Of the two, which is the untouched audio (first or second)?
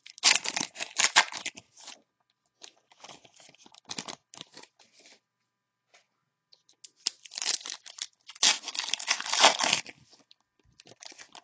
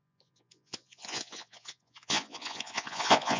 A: first